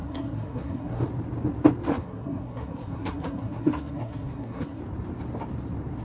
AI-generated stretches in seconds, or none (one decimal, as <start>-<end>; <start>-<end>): 0.0-1.0; 1.9-4.8